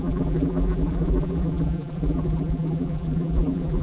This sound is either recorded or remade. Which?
remade